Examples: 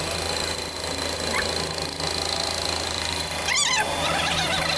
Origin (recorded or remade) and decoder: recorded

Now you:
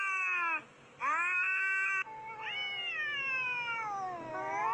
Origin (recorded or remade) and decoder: recorded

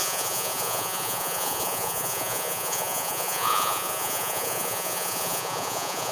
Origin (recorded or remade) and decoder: remade, vocoder, Vocos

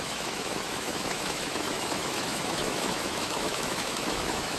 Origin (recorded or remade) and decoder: remade, autoencoder, DAC-VAE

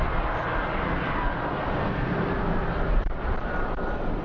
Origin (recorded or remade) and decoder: recorded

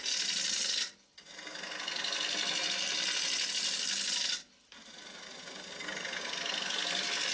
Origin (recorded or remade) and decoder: recorded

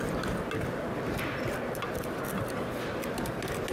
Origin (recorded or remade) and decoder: recorded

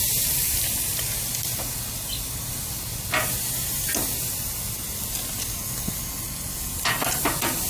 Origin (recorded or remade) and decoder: recorded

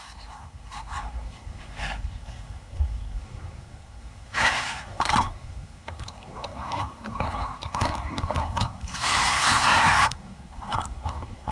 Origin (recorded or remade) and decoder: remade, codec, SNAC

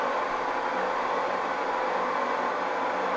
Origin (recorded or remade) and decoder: recorded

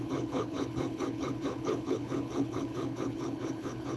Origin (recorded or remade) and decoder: remade, codec, HILCodec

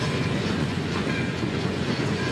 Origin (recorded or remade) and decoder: remade, vocoder, Vocos